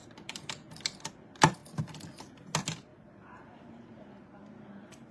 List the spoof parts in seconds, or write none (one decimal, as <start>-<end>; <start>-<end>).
0.0-1.1; 1.6-2.2; 2.9-3.8